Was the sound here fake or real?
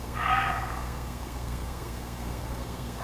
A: fake